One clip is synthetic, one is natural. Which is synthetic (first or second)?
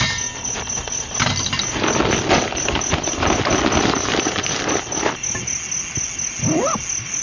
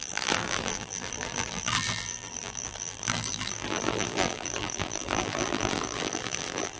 second